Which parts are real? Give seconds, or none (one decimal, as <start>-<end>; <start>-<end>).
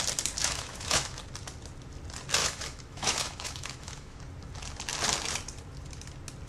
0.0-0.4; 1.2-2.4; 4.2-6.5